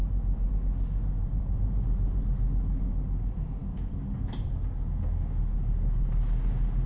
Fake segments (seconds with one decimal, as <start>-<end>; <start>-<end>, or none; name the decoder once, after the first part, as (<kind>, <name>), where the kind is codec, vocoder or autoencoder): 0.0-0.5 (vocoder, BigVGAN v2); 1.2-2.2